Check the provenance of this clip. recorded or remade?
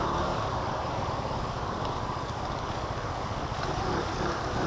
remade